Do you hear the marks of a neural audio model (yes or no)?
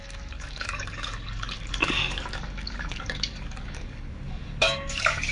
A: yes